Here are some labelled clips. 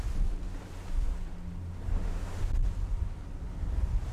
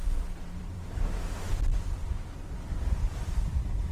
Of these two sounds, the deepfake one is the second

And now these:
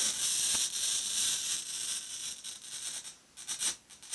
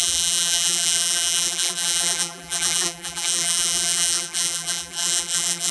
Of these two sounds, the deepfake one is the second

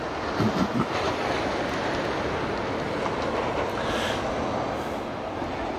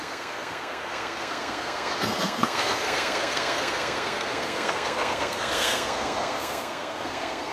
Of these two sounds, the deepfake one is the second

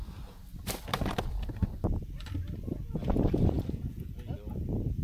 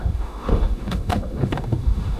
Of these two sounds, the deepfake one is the second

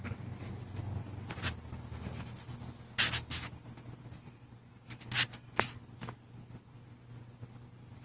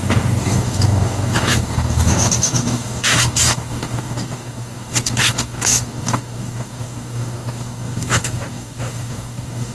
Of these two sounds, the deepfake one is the second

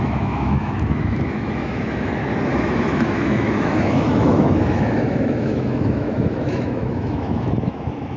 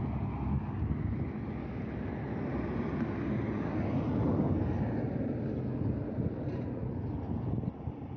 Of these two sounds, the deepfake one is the first